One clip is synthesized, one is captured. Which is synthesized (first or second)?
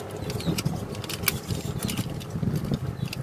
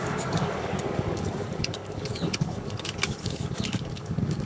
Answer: second